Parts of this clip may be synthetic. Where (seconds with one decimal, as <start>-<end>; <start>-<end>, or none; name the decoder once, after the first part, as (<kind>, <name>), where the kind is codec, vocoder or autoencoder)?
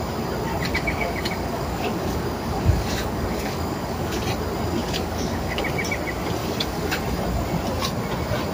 0.7-4.2 (codec, DAC); 4.8-5.6; 6.4-7.0